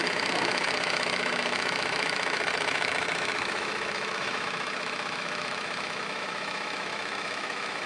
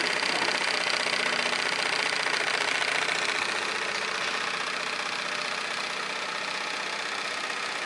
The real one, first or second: second